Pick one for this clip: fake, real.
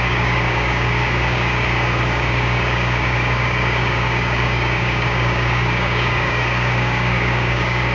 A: fake